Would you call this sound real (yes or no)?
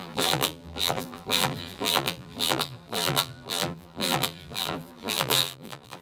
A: no